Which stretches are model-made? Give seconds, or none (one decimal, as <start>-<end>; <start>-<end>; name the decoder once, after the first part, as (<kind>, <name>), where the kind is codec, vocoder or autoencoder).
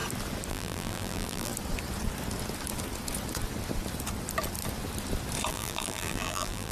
0.5-1.5 (vocoder, BigVGAN v2); 5.5-6.7